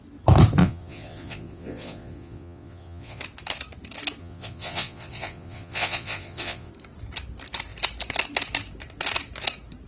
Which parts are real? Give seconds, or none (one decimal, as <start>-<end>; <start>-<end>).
0.0-0.6; 3.2-4.2; 6.7-9.9